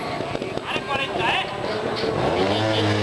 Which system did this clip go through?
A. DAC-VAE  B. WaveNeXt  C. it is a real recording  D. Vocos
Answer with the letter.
C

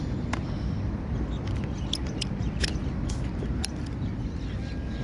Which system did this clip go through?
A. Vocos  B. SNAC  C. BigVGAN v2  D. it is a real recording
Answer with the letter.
D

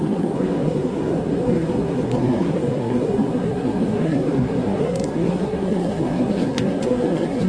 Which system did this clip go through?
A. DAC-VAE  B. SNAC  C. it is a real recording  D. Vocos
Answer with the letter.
B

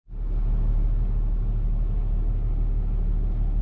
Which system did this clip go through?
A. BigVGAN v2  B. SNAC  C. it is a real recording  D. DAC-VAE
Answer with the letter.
C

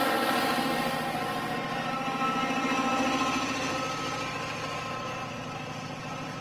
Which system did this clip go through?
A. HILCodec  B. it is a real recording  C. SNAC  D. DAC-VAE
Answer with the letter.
B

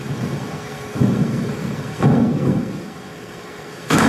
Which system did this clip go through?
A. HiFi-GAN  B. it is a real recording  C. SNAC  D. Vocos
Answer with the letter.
C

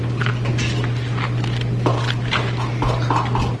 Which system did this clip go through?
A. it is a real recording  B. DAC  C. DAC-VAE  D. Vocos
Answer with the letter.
A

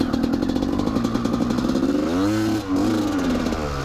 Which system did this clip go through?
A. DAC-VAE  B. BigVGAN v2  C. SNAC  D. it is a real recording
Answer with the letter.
D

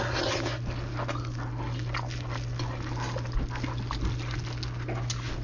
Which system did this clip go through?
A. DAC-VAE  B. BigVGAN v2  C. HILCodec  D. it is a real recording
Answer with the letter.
D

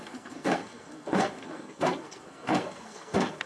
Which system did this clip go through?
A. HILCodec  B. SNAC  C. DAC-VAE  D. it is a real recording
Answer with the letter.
B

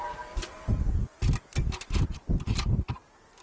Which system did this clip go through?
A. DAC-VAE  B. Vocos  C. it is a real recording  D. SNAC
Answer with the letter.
C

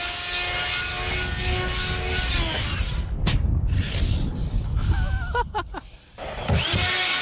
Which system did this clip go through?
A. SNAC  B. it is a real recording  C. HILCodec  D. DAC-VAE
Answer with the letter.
B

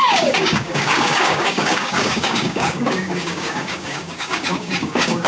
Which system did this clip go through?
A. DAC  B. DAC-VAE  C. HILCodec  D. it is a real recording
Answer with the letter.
A